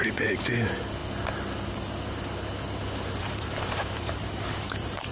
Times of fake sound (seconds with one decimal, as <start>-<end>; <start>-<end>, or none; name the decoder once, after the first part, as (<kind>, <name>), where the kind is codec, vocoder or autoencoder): 0.0-1.0 (vocoder, BigVGAN v2); 3.2-5.1